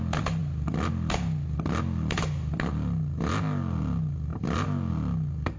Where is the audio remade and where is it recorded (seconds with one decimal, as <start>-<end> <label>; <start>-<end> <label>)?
0.0-5.6 recorded